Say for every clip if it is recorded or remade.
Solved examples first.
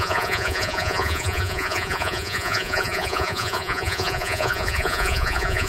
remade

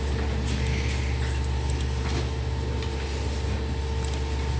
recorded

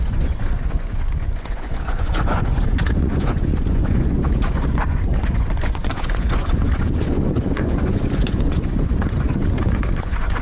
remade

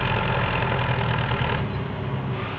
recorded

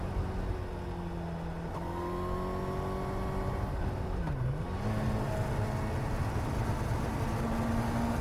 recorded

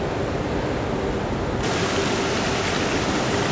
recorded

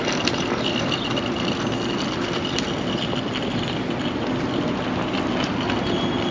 recorded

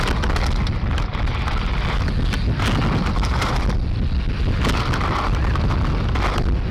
recorded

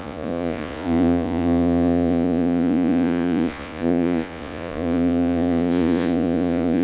remade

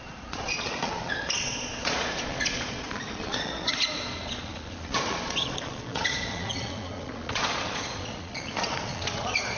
remade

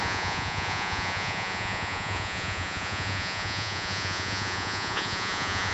remade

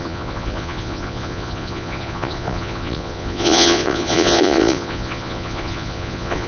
remade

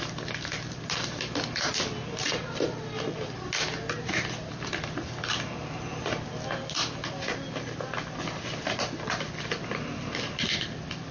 recorded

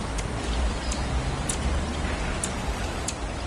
recorded